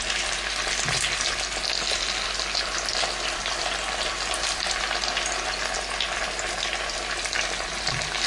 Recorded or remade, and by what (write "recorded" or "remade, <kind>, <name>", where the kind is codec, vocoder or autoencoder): recorded